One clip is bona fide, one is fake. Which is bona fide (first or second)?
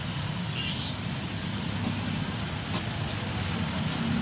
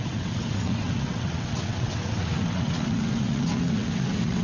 first